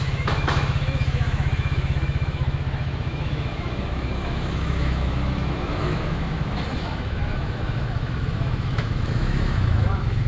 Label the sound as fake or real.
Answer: fake